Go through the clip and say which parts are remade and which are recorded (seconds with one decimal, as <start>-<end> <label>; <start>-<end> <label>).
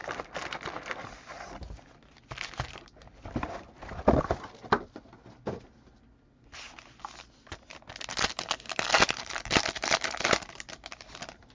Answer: 0.0-11.5 recorded